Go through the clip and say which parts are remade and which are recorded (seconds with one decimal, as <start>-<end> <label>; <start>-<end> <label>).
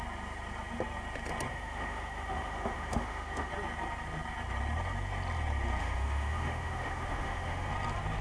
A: 0.0-1.5 recorded; 1.5-3.5 remade; 3.5-5.8 recorded; 5.8-7.7 remade; 7.7-8.2 recorded